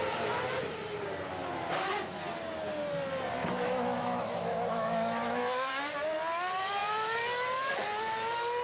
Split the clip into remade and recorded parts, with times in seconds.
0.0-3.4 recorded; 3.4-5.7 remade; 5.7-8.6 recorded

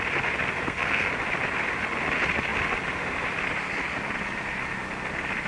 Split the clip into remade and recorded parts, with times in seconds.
0.0-0.6 recorded; 0.6-1.1 remade; 1.1-5.5 recorded

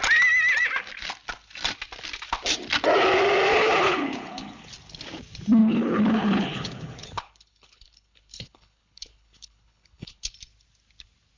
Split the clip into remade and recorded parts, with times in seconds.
0.0-3.5 recorded; 3.5-4.7 remade; 4.7-5.6 recorded; 5.6-10.3 remade; 10.3-11.4 recorded